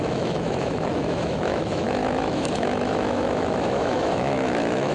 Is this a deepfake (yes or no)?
yes